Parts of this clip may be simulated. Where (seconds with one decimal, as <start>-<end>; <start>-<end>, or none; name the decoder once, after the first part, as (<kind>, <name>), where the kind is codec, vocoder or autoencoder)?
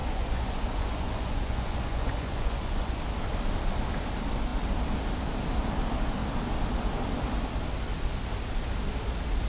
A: 0.0-3.0 (vocoder, Vocos)